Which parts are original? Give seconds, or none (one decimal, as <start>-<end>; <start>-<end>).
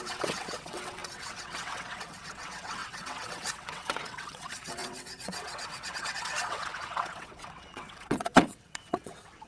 none